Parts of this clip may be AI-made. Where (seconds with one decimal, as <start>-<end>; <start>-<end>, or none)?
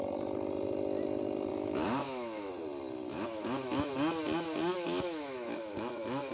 1.5-2.5; 3.1-3.9; 4.7-6.3